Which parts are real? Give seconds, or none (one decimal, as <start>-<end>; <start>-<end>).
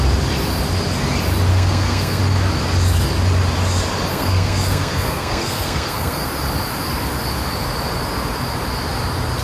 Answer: 0.0-1.5; 2.2-4.1; 6.3-9.4